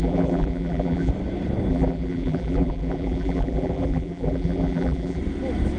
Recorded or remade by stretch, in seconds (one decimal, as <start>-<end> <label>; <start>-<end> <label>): 0.0-1.1 remade; 1.1-1.7 recorded; 1.7-5.2 remade; 5.2-5.8 recorded

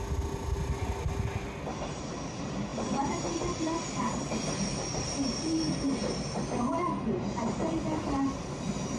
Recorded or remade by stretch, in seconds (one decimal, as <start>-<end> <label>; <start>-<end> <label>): 0.0-2.7 recorded; 2.7-4.2 remade; 4.2-9.0 recorded

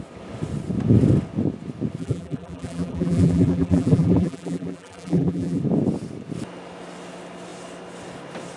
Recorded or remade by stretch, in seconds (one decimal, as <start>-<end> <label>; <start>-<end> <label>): 0.0-2.0 recorded; 2.0-5.6 remade; 5.6-8.6 recorded

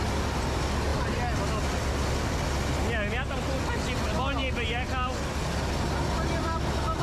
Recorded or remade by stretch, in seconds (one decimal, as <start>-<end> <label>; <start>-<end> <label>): 0.0-7.0 recorded